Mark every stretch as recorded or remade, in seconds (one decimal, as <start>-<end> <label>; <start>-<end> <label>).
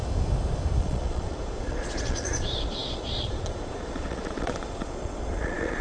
0.0-0.8 recorded; 0.8-5.8 remade